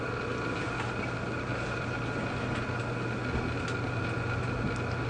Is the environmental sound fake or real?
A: real